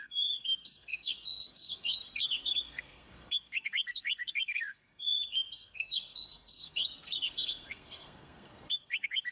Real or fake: fake